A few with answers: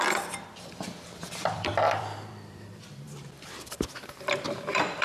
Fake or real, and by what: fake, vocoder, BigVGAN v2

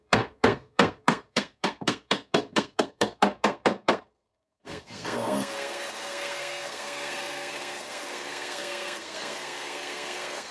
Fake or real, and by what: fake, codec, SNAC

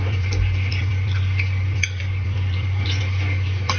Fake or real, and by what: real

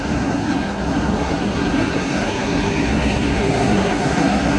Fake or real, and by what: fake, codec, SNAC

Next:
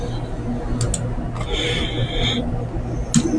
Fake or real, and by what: real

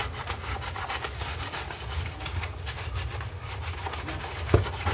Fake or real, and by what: real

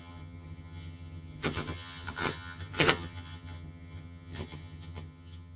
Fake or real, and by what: fake, vocoder, HiFi-GAN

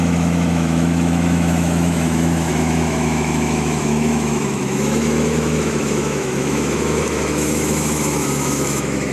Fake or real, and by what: fake, autoencoder, DAC-VAE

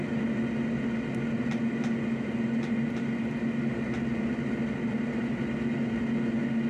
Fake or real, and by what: real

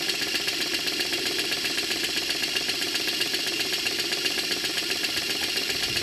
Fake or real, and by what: real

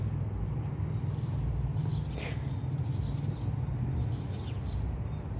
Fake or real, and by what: real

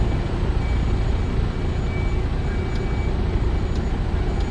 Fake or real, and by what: real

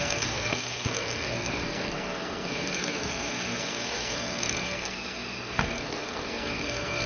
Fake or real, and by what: fake, codec, SNAC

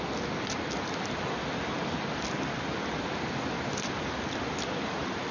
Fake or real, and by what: real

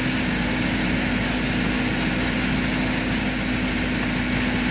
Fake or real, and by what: real